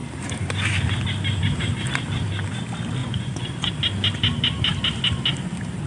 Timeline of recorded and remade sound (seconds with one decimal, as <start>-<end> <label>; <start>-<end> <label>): 0.0-3.0 recorded; 3.0-3.7 remade; 3.7-5.9 recorded

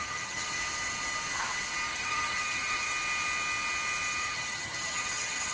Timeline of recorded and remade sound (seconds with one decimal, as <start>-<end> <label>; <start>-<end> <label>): 0.0-0.6 remade; 0.6-1.9 recorded; 1.9-2.9 remade; 2.9-4.2 recorded; 4.2-5.5 remade

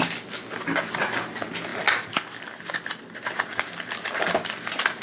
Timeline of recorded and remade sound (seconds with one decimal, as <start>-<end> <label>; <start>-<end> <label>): 0.0-5.0 recorded

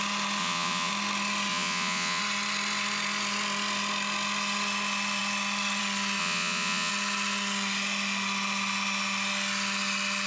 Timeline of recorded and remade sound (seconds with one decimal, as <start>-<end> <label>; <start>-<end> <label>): 0.0-0.4 recorded; 0.4-0.9 remade; 0.9-1.5 recorded; 1.5-2.2 remade; 2.2-6.2 recorded; 6.2-6.9 remade; 6.9-10.3 recorded